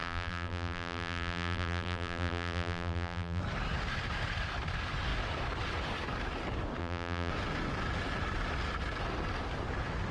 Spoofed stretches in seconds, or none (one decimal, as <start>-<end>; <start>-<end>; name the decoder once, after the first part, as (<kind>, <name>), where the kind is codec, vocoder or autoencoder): 0.0-3.4 (vocoder, BigVGAN v2); 6.8-7.3